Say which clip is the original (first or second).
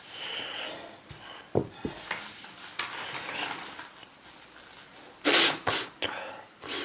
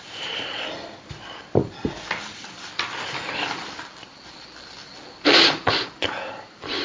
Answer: first